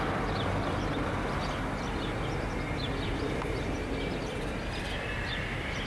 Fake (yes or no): no